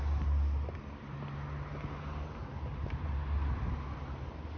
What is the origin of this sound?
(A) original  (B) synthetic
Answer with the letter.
A